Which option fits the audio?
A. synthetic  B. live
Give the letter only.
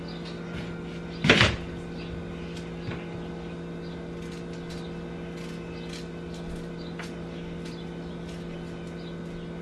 B